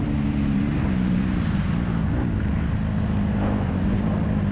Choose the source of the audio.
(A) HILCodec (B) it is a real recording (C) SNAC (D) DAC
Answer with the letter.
B